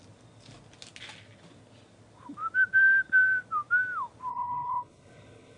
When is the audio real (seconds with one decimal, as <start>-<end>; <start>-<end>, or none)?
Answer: 0.0-4.3